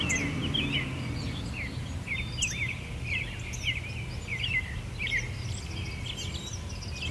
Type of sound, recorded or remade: recorded